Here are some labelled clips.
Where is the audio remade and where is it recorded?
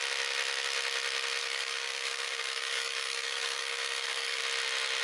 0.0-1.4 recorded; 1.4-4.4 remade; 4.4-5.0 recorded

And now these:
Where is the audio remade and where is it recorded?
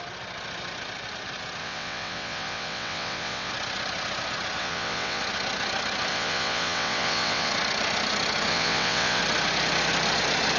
0.0-1.6 recorded; 1.6-3.5 remade; 3.5-4.6 recorded; 4.6-5.2 remade; 5.2-6.1 recorded; 6.1-7.5 remade; 7.5-8.5 recorded; 8.5-9.2 remade; 9.2-10.6 recorded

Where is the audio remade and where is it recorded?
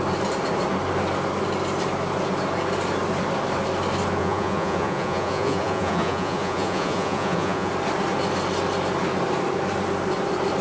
0.0-4.2 recorded; 4.2-7.7 remade; 7.7-10.6 recorded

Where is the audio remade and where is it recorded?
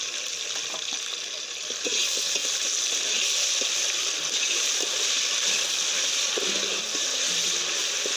0.0-8.2 recorded